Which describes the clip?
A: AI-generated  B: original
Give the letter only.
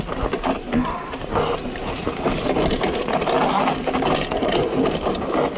B